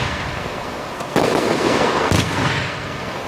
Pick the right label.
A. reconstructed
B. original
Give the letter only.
A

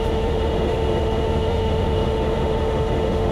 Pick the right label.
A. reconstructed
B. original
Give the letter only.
A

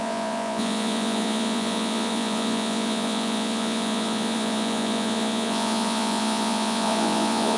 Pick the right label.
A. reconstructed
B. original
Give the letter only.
A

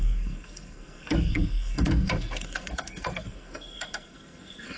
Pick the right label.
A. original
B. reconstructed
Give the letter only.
B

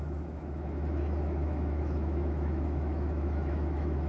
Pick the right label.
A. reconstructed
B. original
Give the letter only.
A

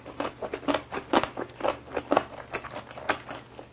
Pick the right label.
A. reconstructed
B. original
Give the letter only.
B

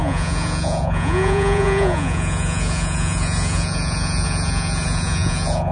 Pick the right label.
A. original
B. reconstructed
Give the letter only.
B